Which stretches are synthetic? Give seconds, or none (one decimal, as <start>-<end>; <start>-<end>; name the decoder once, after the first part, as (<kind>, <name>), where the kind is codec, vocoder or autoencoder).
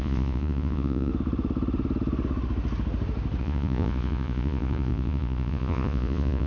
0.0-1.1 (vocoder, Vocos); 3.4-6.5